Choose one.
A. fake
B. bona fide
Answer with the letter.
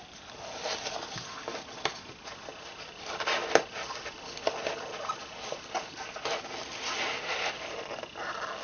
B